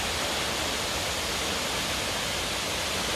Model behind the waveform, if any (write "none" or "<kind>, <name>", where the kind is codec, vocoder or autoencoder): none